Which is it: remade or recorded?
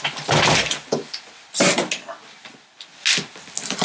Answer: recorded